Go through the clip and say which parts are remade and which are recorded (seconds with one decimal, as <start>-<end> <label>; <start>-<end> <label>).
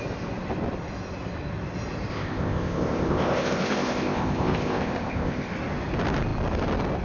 0.0-2.1 recorded; 2.1-5.5 remade; 5.5-7.0 recorded